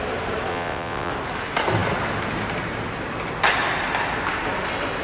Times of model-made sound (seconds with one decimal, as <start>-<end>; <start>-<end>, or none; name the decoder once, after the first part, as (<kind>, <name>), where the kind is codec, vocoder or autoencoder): 0.5-1.1 (vocoder, WaveNeXt)